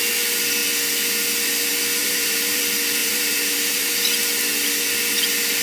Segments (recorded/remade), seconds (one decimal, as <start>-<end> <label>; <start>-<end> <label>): 0.0-2.0 recorded; 2.0-2.6 remade; 2.6-3.0 recorded; 3.0-4.0 remade; 4.0-5.6 recorded